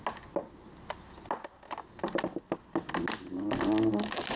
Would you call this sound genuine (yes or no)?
yes